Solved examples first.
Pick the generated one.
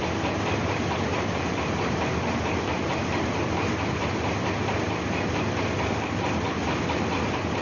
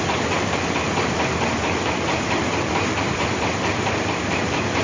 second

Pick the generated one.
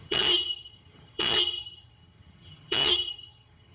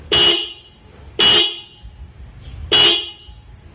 first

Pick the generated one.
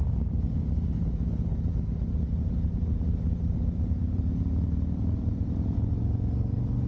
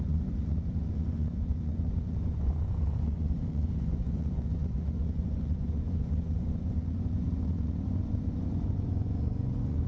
second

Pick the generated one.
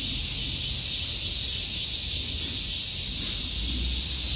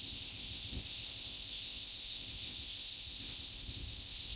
second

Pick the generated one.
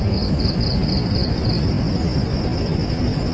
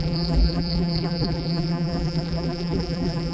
second